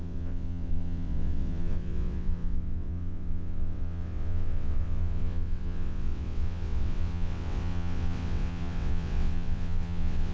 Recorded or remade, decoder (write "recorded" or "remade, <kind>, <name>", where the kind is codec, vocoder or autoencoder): remade, vocoder, WaveNeXt